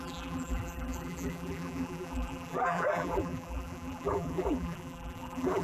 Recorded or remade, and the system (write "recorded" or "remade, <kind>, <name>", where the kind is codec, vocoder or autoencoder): remade, vocoder, BigVGAN v2